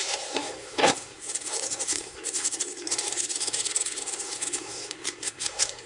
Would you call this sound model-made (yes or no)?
yes